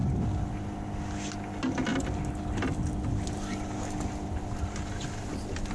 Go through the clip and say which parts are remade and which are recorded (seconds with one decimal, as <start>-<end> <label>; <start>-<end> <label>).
0.0-5.7 recorded